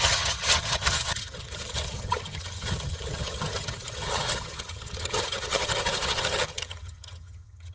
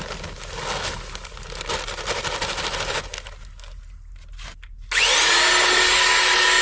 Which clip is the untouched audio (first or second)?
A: second